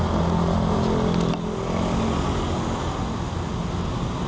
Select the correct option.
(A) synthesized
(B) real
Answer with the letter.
B